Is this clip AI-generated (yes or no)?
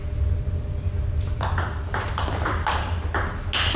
no